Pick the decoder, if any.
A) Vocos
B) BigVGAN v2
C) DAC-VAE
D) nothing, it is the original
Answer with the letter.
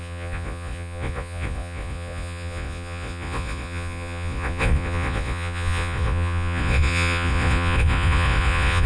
A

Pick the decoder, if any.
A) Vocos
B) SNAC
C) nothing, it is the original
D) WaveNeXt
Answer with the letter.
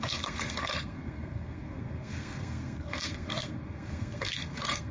B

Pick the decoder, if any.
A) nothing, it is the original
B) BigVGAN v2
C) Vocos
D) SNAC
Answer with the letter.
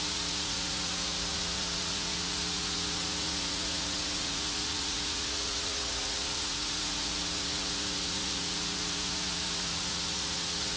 C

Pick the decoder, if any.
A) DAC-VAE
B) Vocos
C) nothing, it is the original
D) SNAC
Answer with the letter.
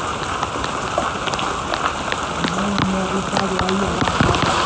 C